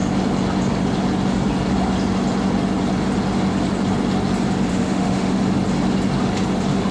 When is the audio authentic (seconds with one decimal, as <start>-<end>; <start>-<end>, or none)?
0.0-4.7; 5.4-6.9